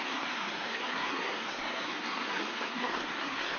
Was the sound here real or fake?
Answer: fake